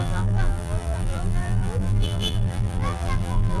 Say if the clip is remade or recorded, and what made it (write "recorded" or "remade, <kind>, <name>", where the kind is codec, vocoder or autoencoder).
remade, vocoder, BigVGAN v2